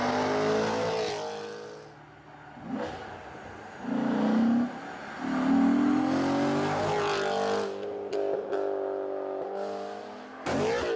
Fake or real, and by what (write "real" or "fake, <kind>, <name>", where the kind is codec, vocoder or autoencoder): real